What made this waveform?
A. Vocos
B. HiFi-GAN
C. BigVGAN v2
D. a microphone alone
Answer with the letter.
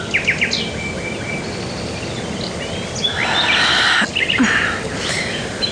D